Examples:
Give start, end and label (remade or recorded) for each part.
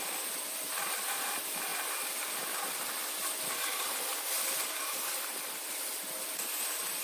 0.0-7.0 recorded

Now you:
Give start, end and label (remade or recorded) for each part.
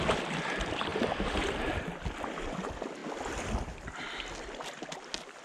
0.0-5.4 recorded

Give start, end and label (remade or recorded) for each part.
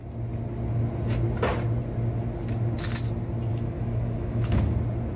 0.0-3.5 recorded; 3.5-4.6 remade; 4.6-5.2 recorded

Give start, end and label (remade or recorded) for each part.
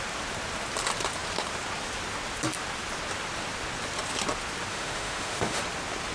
0.0-4.7 recorded; 4.7-5.6 remade; 5.6-6.1 recorded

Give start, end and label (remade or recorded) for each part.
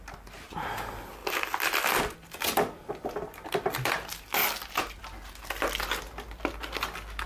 0.0-7.3 recorded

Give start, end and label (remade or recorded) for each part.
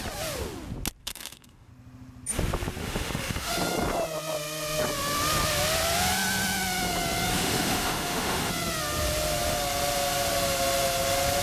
0.0-1.0 recorded; 1.0-1.7 remade; 1.7-2.8 recorded; 2.8-3.5 remade; 3.5-7.3 recorded; 7.3-8.5 remade; 8.5-11.4 recorded